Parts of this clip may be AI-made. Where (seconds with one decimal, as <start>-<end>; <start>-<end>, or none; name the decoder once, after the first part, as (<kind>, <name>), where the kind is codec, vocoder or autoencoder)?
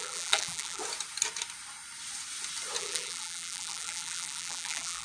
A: 0.0-0.8 (vocoder, BigVGAN v2); 2.8-5.0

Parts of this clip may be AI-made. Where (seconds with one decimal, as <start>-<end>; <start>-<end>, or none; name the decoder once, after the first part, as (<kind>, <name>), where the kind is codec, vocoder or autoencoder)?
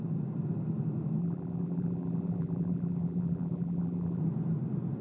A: 1.2-4.2 (vocoder, BigVGAN v2)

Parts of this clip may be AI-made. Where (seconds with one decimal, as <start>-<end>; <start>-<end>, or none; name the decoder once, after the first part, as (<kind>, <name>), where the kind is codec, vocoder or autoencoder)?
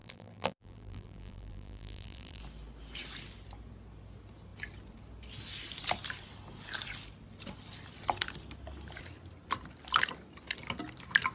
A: 0.0-2.4 (vocoder, BigVGAN v2)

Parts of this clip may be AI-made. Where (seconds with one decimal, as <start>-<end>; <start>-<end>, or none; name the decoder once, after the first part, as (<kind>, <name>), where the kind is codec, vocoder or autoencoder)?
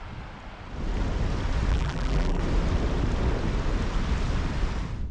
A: 1.7-2.4 (vocoder, BigVGAN v2)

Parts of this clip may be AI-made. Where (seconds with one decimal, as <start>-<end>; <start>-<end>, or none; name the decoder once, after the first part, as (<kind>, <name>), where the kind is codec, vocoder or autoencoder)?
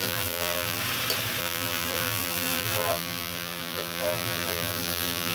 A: 0.0-0.8 (vocoder, BigVGAN v2); 1.4-5.3